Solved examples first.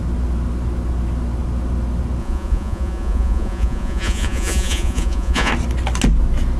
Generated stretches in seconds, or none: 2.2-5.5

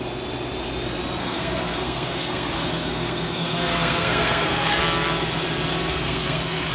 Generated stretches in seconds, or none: 1.2-4.8; 5.7-6.7

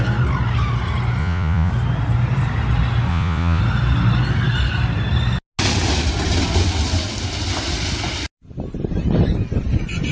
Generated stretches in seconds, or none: 1.2-1.7; 3.1-3.6

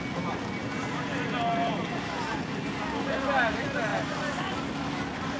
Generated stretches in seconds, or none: none

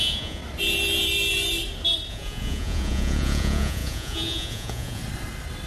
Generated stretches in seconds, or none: 0.0-0.4; 2.1-5.0

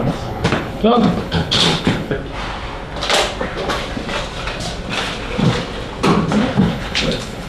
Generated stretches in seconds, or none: 0.0-2.1; 6.6-7.5

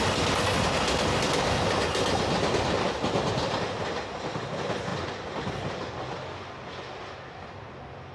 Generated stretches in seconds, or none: none